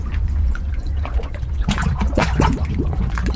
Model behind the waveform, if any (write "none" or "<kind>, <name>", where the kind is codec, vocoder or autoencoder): vocoder, Vocos